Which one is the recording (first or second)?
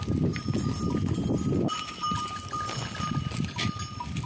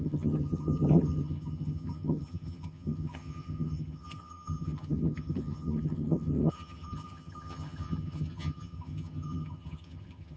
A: first